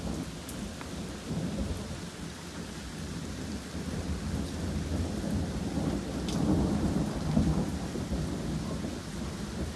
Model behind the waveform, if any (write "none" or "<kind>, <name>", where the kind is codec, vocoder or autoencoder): none